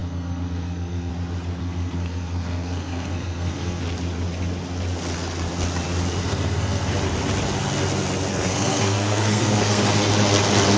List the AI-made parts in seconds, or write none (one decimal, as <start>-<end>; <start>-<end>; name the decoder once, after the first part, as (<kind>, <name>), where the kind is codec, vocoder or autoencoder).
0.0-1.1 (codec, SNAC); 1.6-3.8; 6.2-6.9; 8.3-9.8